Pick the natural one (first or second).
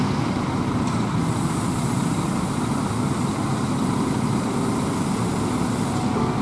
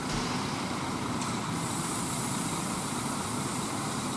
first